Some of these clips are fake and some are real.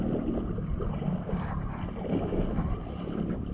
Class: real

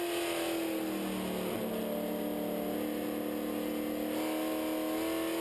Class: real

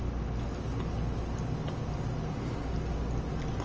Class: real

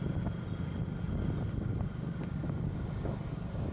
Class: real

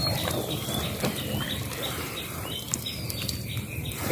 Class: fake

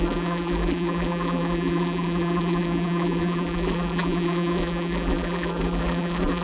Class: fake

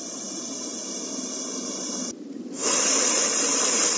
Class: fake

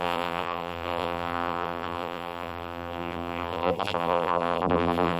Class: fake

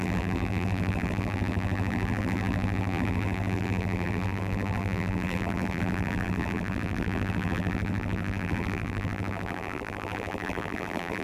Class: fake